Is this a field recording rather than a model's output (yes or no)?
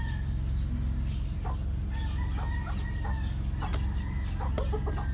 yes